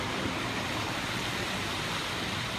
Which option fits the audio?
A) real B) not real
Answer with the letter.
A